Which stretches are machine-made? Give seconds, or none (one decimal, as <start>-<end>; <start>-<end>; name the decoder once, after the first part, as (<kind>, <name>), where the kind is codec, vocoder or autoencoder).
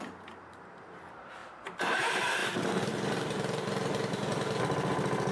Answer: 0.0-2.4 (vocoder, BigVGAN v2); 2.9-5.3